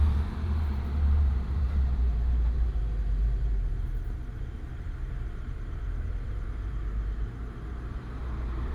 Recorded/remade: remade